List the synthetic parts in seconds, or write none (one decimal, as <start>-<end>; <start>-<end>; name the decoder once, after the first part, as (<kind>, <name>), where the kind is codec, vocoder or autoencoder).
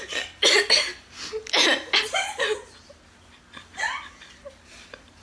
none